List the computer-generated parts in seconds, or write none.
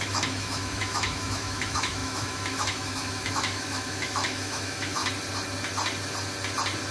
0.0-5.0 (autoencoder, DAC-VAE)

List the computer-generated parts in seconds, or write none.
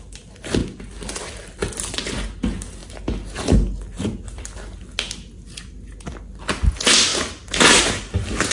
none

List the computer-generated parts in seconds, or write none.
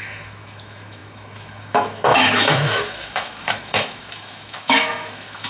0.0-5.5 (autoencoder, DAC-VAE)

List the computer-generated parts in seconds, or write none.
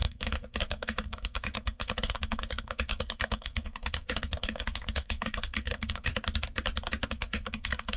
0.0-6.1 (codec, SNAC); 7.1-8.0